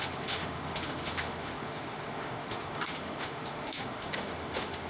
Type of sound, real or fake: fake